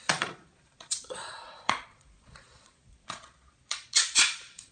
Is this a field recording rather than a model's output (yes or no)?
no